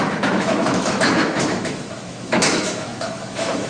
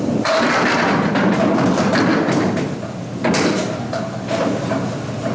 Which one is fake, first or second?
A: first